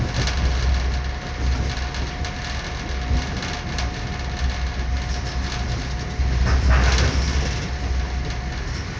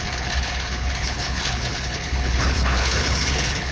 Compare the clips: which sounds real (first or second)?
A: first